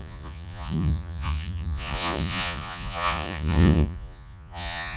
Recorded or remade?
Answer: remade